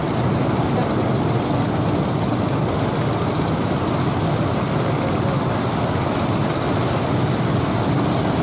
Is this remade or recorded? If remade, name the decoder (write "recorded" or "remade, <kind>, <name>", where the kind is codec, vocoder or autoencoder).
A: recorded